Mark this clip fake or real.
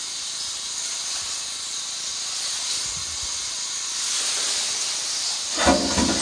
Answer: real